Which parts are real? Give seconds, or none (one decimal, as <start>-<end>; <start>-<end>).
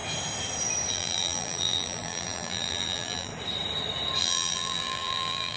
0.0-0.9; 3.3-4.2